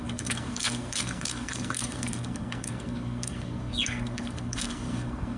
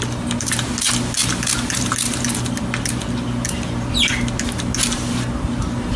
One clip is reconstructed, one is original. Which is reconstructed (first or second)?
first